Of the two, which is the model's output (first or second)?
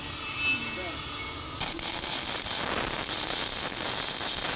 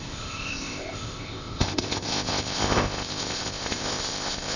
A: second